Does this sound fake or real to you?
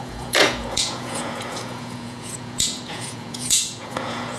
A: fake